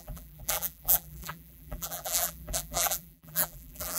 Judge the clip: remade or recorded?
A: remade